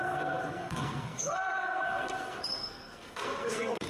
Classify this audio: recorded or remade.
remade